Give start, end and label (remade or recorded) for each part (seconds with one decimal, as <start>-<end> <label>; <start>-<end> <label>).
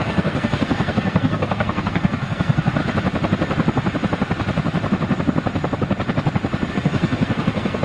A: 0.0-2.8 remade; 2.8-6.7 recorded; 6.7-7.8 remade